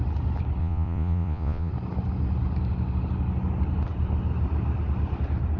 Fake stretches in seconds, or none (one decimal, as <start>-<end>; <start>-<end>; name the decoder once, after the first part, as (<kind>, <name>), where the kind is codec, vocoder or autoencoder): 0.6-1.7 (vocoder, Vocos)